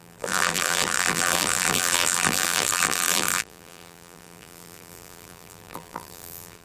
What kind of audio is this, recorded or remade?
remade